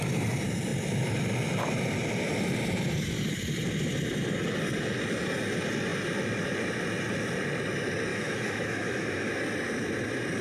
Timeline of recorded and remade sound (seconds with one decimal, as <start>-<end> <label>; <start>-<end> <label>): 0.0-8.1 recorded; 8.1-9.3 remade; 9.3-10.4 recorded